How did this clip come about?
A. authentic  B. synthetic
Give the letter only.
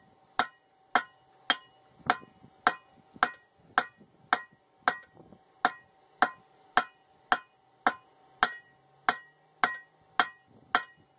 A